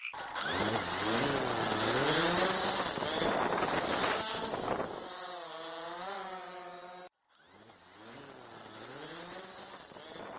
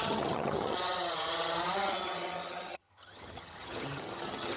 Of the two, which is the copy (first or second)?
second